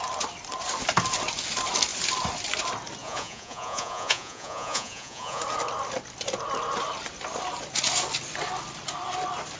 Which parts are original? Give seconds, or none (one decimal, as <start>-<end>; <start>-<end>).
0.0-3.0; 5.4-9.6